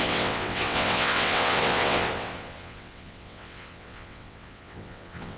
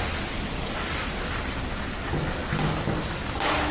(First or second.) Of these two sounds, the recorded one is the second